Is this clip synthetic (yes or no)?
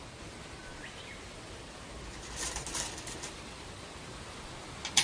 no